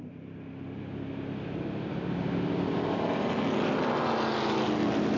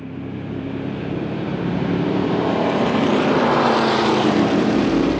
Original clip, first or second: first